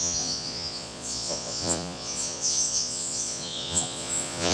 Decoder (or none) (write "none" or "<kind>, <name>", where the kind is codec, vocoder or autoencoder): vocoder, Vocos